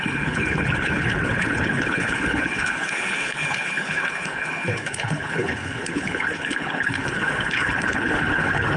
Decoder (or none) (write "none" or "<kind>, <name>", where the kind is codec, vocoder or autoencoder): codec, HILCodec